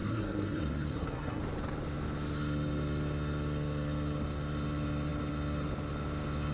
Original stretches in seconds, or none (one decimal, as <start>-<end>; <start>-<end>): 1.4-6.5